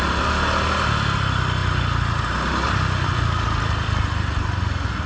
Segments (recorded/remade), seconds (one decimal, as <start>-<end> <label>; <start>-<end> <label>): 0.0-5.1 recorded